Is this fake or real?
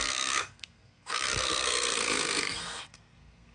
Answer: fake